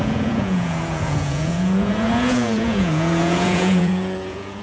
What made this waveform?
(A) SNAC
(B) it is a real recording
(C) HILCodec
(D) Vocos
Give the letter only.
D